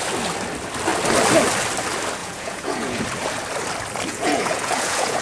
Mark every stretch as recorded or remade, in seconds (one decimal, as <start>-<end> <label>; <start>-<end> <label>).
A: 0.0-2.2 recorded; 2.2-3.0 remade; 3.0-4.1 recorded; 4.1-5.2 remade

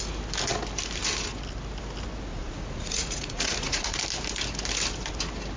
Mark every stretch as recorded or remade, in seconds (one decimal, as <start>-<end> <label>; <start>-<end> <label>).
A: 0.0-2.3 recorded; 2.3-4.0 remade; 4.0-5.6 recorded

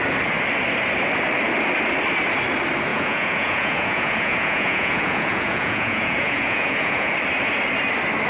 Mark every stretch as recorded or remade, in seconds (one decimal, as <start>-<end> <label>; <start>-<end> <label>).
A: 0.0-2.9 recorded; 2.9-7.1 remade; 7.1-8.3 recorded

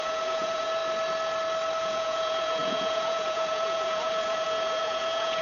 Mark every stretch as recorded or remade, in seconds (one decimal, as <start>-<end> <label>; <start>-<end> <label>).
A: 0.0-0.8 remade; 0.8-1.8 recorded; 1.8-5.4 remade

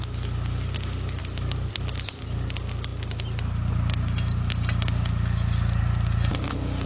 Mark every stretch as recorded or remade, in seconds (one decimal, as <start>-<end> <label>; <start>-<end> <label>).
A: 0.0-6.9 recorded

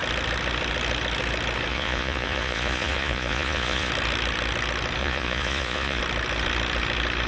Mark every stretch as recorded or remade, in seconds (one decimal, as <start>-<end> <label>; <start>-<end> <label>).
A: 0.0-1.7 recorded; 1.7-3.9 remade; 3.9-5.0 recorded; 5.0-6.0 remade; 6.0-7.3 recorded